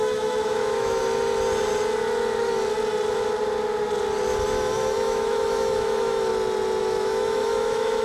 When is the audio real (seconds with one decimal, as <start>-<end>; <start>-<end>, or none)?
1.0-4.7; 6.3-6.8